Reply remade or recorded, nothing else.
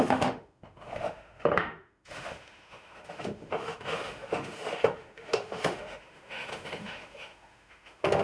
remade